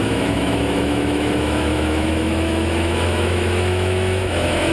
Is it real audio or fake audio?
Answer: fake